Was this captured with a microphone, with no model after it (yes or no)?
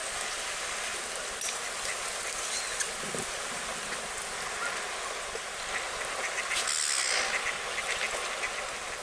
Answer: yes